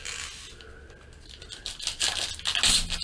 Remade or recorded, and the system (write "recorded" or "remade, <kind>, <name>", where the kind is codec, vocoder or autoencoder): recorded